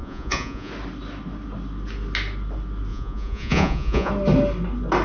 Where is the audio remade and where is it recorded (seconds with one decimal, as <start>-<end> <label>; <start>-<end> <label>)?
0.0-0.7 remade; 0.7-2.9 recorded; 2.9-4.1 remade; 4.1-5.0 recorded